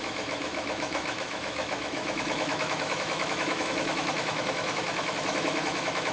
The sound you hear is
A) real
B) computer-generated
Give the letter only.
B